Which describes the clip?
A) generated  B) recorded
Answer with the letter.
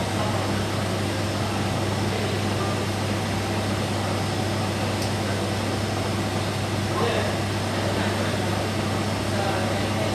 B